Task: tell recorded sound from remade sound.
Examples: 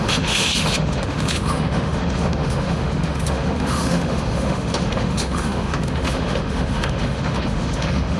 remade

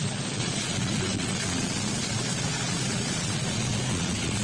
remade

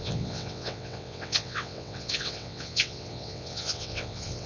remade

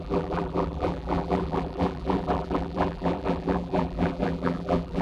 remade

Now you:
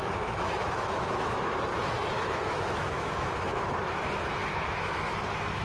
remade